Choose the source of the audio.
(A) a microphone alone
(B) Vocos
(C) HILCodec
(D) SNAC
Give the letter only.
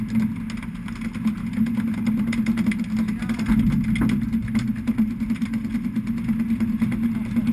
A